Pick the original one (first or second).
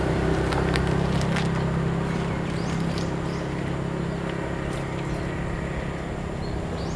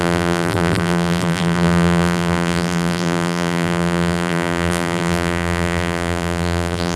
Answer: first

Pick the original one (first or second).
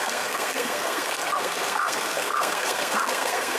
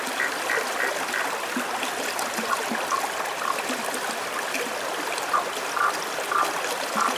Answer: second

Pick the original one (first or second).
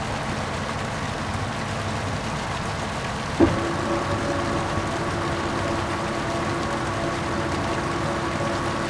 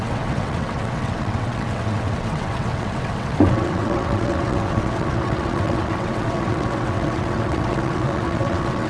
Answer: first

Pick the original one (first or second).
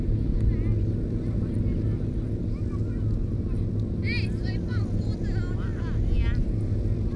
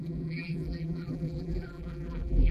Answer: first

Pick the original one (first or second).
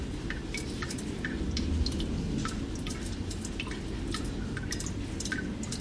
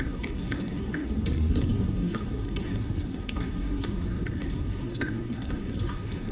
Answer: first